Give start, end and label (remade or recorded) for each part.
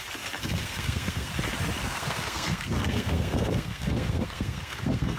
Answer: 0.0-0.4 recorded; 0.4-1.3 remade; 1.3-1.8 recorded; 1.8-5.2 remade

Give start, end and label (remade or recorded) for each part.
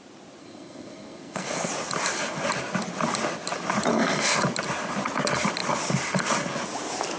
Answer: 0.0-0.4 recorded; 0.4-1.7 remade; 1.7-3.9 recorded; 3.9-4.4 remade; 4.4-7.2 recorded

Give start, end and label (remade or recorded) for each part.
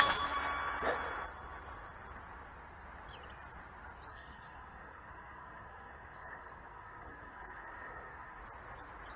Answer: 0.0-4.1 recorded; 4.1-8.4 remade; 8.4-9.2 recorded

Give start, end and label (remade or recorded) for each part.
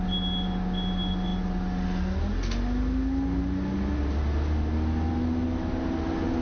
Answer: 0.0-6.4 recorded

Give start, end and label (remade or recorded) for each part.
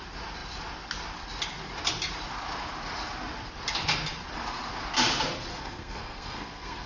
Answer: 0.0-5.5 recorded; 5.5-6.9 remade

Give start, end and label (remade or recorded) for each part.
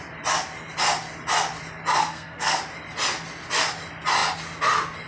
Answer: 0.0-2.0 recorded; 2.0-2.6 remade; 2.6-5.1 recorded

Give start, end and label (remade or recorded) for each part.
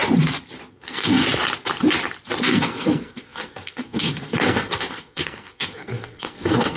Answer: 0.0-0.7 recorded; 0.7-1.2 remade; 1.2-2.4 recorded; 2.4-6.8 remade